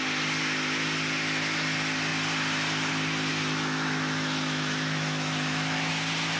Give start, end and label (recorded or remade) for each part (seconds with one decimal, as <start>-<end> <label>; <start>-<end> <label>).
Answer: 0.0-3.3 recorded; 3.3-5.9 remade; 5.9-6.4 recorded